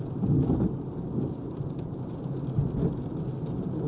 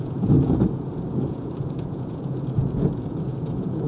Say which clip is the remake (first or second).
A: second